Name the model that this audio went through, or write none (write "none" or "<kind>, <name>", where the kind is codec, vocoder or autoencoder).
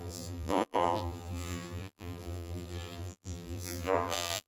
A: vocoder, BigVGAN v2